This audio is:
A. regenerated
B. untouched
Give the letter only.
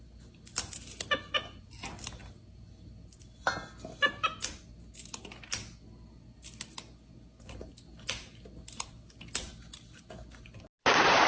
B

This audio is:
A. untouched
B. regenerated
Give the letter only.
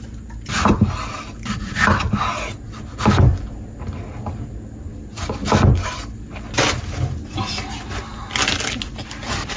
A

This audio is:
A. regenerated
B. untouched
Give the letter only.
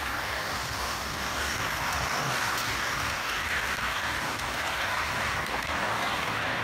A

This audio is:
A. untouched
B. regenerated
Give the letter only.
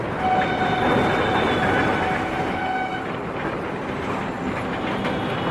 A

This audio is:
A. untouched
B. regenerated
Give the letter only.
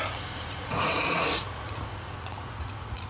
B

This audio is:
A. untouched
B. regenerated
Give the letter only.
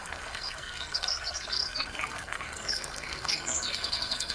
B